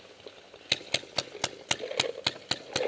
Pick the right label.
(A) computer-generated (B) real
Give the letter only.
B